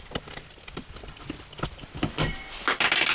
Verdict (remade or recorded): recorded